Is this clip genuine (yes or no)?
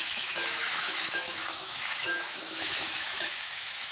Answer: no